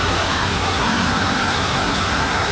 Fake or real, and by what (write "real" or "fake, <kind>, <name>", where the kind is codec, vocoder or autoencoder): fake, codec, SNAC